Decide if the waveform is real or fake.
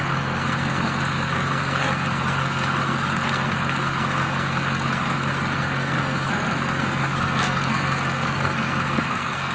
fake